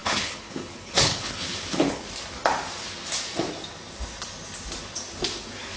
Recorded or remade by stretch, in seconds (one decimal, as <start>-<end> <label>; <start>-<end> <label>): 0.0-2.0 remade; 2.0-5.8 recorded